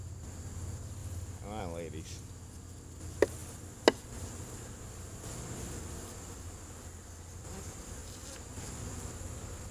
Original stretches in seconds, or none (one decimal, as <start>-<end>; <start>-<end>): 0.0-1.0; 1.6-8.0; 9.2-9.7